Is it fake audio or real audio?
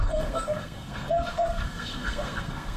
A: fake